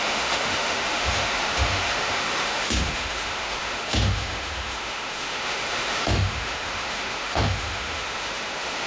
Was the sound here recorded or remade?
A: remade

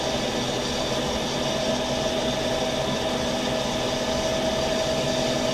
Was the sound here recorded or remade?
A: recorded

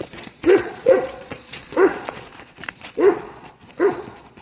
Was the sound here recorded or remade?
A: remade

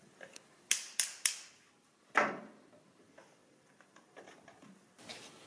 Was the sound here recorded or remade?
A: recorded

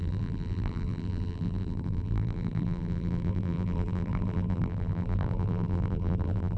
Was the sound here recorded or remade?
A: remade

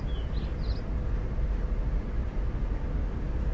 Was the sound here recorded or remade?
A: recorded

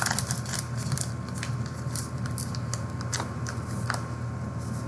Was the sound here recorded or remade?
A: recorded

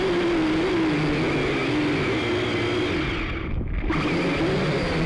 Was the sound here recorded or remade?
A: recorded